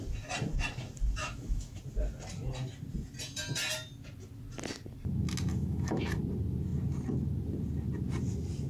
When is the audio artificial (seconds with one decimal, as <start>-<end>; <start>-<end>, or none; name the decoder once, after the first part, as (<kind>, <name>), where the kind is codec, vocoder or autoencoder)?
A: 1.2-1.8 (autoencoder, DAC-VAE); 5.5-6.0